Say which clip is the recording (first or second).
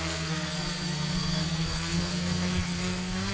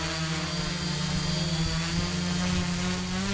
second